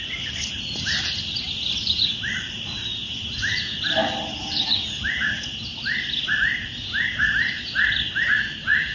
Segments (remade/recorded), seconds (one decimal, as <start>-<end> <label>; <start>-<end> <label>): 0.0-8.9 recorded